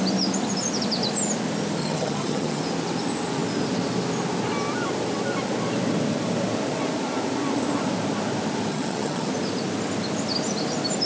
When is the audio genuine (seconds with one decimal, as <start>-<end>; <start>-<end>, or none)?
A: 0.0-1.8; 2.6-8.7; 9.3-11.1